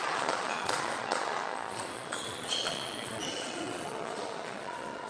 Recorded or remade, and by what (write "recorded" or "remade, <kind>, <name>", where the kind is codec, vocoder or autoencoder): remade, vocoder, Vocos